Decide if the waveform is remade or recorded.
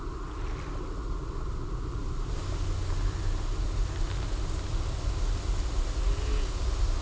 recorded